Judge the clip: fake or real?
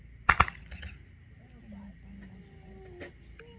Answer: real